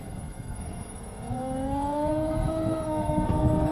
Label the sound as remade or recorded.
remade